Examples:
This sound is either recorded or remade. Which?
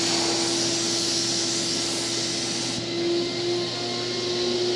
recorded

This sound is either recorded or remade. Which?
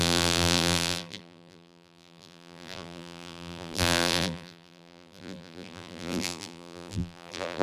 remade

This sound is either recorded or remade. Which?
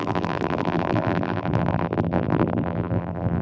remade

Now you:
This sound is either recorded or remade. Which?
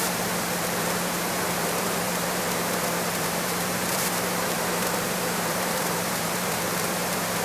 remade